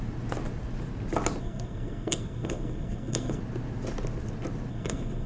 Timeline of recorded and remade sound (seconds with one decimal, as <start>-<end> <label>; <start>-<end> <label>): 0.0-1.4 recorded; 1.4-3.4 remade; 3.4-4.7 recorded; 4.7-5.3 remade